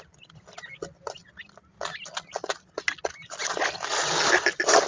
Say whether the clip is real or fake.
real